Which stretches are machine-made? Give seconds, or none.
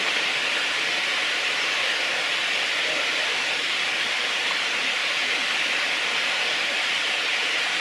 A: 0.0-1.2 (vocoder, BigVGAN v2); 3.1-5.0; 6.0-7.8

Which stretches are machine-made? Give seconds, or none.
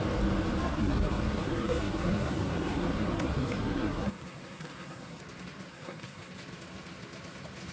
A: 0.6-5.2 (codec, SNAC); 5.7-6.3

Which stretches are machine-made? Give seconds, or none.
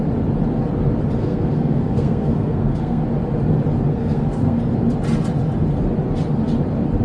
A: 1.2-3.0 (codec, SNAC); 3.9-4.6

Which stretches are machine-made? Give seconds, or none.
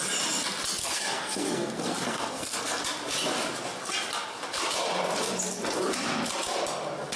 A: 0.8-2.8 (codec, SNAC)